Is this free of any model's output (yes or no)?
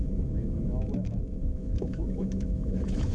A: no